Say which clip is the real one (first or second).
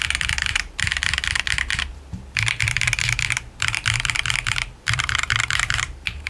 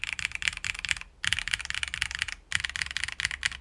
second